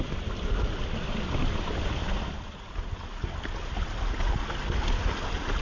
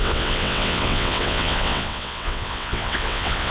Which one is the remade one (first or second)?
second